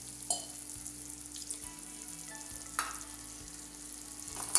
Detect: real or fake real